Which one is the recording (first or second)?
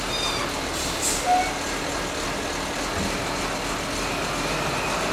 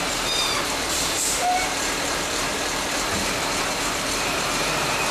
first